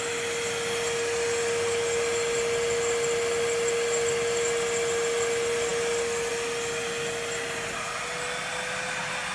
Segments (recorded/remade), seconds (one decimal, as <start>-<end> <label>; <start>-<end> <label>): 0.0-9.3 recorded